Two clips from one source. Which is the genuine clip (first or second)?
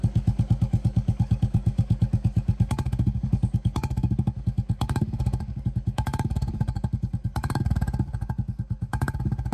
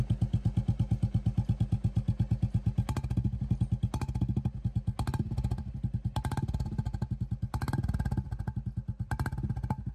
second